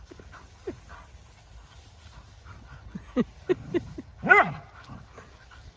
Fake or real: real